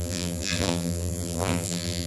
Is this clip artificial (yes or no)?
yes